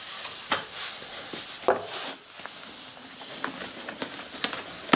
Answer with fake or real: real